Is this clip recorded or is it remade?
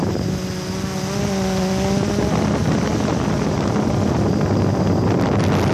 recorded